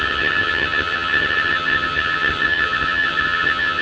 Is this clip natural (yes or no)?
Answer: no